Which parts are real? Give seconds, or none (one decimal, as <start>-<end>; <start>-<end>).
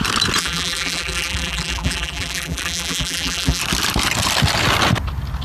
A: 0.0-0.4; 3.6-5.4